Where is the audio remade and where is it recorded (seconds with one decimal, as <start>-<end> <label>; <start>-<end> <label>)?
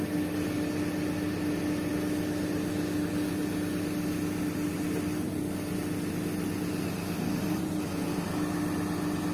0.0-9.3 recorded